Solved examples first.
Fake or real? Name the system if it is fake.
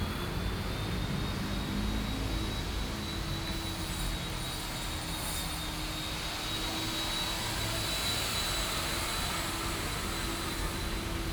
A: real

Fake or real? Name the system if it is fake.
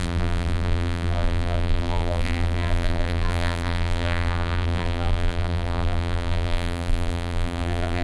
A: fake, vocoder, BigVGAN v2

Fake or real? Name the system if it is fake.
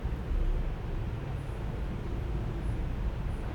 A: real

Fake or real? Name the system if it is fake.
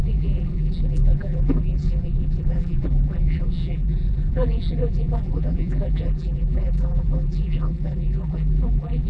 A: fake, vocoder, BigVGAN v2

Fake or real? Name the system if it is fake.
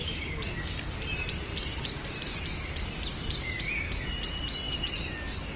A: real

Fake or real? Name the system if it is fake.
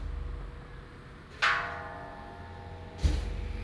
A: real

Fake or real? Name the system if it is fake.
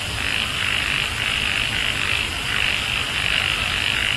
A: real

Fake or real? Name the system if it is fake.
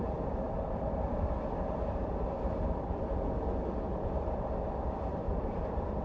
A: fake, vocoder, BigVGAN v2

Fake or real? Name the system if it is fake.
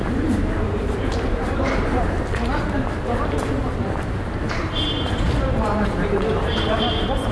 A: fake, vocoder, BigVGAN v2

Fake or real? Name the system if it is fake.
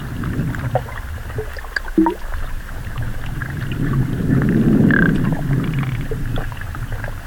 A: real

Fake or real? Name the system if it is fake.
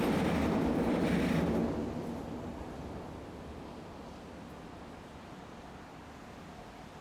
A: real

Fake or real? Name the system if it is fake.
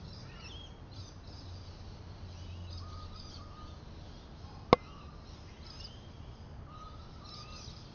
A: real